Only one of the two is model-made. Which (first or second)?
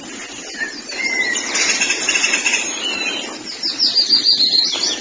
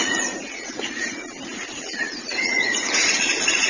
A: second